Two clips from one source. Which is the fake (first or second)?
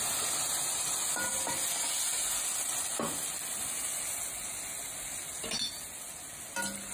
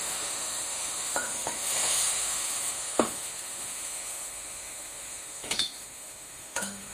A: second